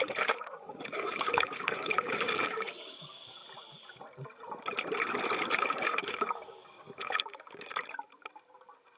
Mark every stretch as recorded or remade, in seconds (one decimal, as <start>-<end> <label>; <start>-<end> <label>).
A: 0.0-3.4 remade; 3.4-5.6 recorded; 5.6-7.7 remade; 7.7-9.0 recorded